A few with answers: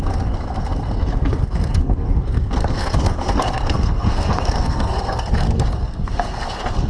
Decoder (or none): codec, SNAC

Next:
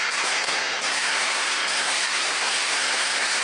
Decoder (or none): codec, SNAC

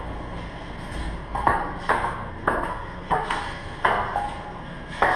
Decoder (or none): codec, SNAC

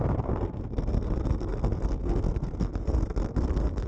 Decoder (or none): codec, SNAC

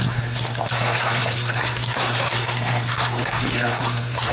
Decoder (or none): codec, SNAC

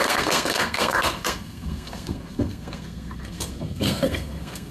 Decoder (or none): codec, SNAC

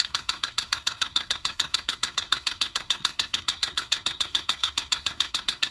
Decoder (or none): codec, SNAC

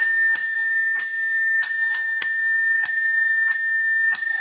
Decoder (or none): codec, SNAC